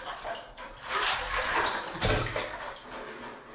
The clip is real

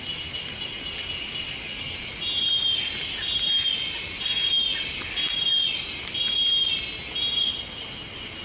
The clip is real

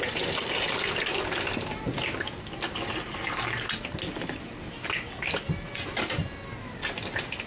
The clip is real